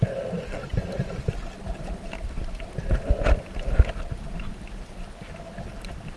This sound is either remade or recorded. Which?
recorded